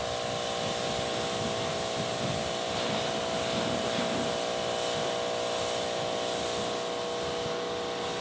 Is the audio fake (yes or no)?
no